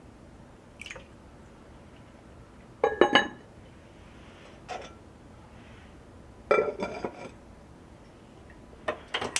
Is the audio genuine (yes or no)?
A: yes